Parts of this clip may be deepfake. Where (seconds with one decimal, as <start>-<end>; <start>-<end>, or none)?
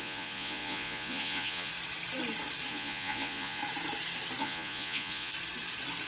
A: 0.0-1.7; 2.7-3.6; 4.4-5.3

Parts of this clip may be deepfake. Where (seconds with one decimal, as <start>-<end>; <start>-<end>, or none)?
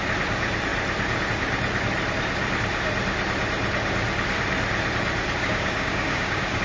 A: 5.4-6.6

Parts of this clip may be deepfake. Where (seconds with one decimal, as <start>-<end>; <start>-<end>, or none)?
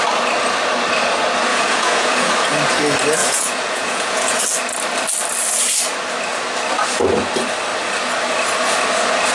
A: 1.5-2.3; 3.2-4.4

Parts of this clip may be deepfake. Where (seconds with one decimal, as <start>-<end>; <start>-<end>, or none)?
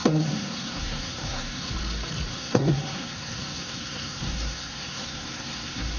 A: 0.0-1.7; 2.3-6.0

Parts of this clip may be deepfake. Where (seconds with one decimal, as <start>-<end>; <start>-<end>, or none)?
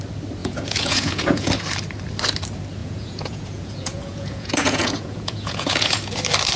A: 0.4-1.5; 2.8-6.1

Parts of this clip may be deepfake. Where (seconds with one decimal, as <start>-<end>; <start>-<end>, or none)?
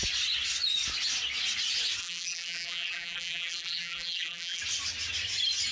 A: 2.0-4.6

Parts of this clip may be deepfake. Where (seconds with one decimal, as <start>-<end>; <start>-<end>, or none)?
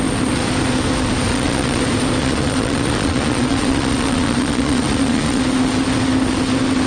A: 1.3-1.8; 2.2-5.4